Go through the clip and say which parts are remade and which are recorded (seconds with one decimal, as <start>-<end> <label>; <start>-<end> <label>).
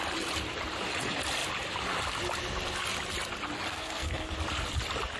0.0-3.7 recorded; 3.7-4.3 remade; 4.3-5.2 recorded